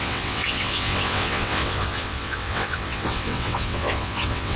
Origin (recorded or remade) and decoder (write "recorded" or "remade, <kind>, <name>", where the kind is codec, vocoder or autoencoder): remade, vocoder, WaveNeXt